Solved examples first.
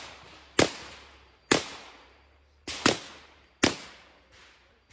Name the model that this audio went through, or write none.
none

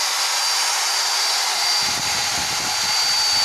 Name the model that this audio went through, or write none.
none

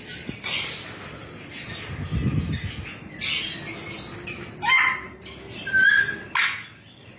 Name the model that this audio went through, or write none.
none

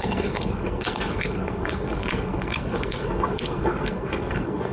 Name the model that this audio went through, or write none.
codec, SNAC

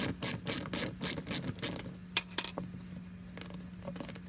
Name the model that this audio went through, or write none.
none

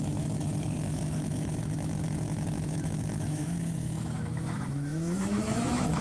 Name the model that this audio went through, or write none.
autoencoder, DAC-VAE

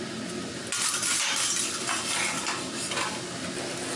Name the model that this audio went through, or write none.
none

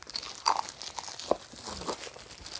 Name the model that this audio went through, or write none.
none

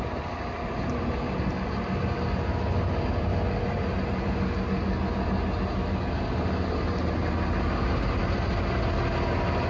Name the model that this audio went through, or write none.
none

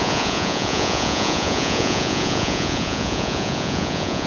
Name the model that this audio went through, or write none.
vocoder, Vocos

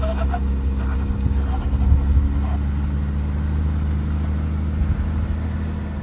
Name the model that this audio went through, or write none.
none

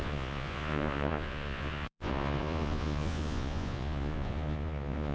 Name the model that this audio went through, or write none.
vocoder, Vocos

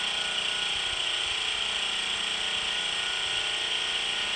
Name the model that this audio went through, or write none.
none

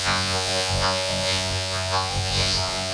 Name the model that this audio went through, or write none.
vocoder, Vocos